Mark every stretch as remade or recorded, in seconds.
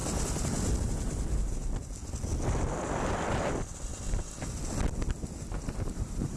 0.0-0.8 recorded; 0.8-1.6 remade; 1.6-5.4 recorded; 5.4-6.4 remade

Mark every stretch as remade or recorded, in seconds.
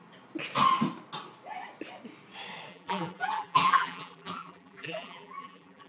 0.0-2.7 recorded; 2.7-5.9 remade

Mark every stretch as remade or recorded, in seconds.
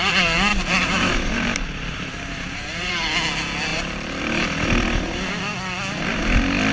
0.0-0.5 recorded; 0.5-2.9 remade; 2.9-3.7 recorded; 3.7-4.2 remade; 4.2-6.7 recorded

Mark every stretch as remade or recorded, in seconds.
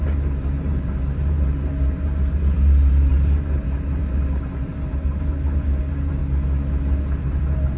0.0-6.2 remade; 6.2-7.0 recorded; 7.0-7.8 remade